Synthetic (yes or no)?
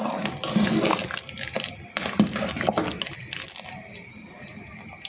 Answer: no